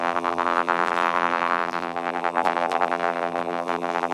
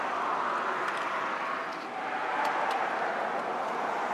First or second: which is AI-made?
first